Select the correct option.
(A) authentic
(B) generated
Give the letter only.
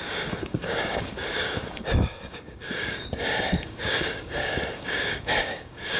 B